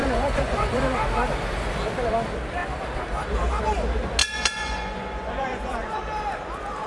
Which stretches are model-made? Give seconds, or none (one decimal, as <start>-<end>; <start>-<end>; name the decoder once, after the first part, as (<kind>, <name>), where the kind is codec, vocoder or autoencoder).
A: 0.0-0.8 (vocoder, Vocos); 4.2-6.0